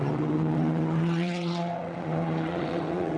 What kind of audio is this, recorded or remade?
remade